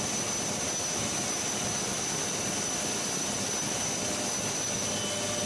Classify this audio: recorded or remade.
recorded